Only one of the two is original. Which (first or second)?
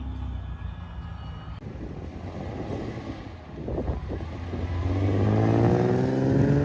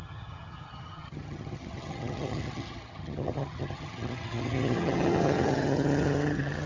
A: first